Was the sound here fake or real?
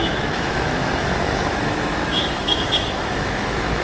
fake